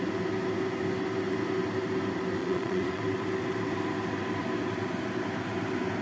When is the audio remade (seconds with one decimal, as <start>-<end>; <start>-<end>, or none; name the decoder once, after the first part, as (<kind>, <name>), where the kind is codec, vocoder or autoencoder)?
2.4-3.0 (vocoder, Vocos)